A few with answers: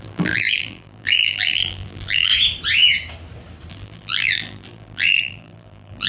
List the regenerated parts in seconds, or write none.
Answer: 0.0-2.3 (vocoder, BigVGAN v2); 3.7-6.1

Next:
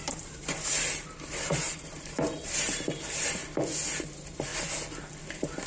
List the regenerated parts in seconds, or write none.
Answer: 0.0-3.4 (vocoder, BigVGAN v2); 3.9-4.5; 5.2-5.7

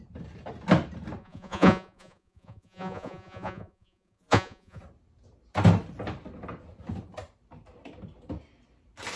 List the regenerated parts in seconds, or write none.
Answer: 1.2-4.8 (vocoder, Vocos)

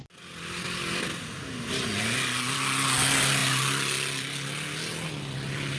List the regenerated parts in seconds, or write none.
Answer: none

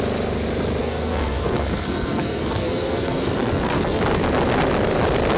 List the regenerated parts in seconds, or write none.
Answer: 0.8-4.0 (codec, SNAC)

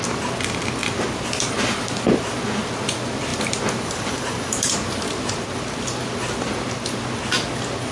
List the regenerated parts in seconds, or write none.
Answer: 0.8-2.4 (vocoder, BigVGAN v2); 3.3-5.5